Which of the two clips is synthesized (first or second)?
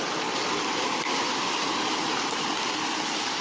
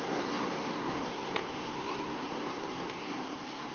second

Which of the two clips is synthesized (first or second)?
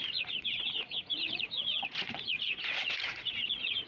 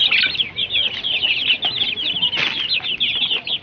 first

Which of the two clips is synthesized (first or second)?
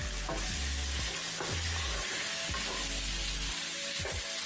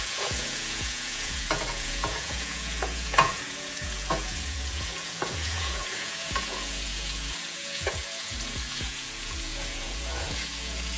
second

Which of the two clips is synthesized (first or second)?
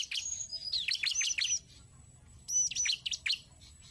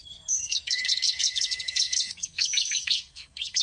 second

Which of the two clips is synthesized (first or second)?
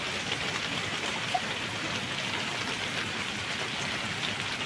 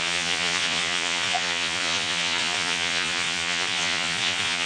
second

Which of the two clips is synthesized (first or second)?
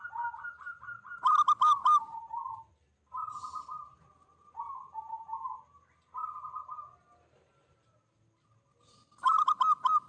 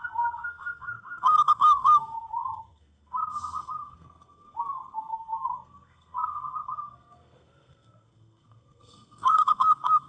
second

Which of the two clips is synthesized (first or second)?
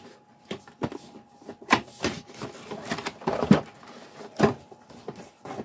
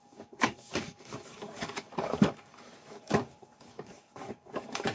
second